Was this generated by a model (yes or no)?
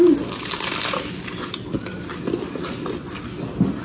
no